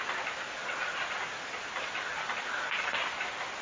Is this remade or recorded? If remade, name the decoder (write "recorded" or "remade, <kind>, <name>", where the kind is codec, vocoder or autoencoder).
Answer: recorded